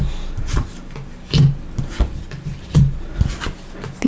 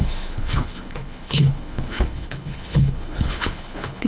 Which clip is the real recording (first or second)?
first